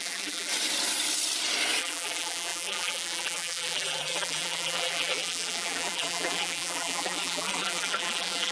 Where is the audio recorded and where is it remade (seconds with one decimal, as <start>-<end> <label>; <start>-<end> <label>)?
0.0-0.5 remade; 0.5-1.8 recorded; 1.8-8.5 remade